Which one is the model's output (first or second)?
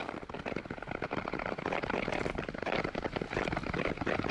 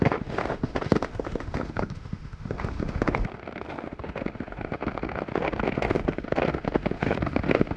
second